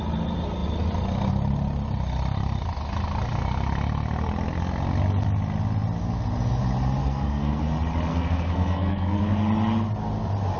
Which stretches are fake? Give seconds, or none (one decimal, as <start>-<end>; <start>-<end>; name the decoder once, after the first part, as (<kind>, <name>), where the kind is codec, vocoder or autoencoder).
7.0-7.6 (codec, SNAC); 8.1-9.2